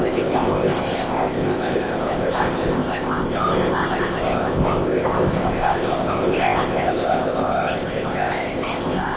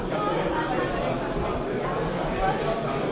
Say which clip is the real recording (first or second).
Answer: second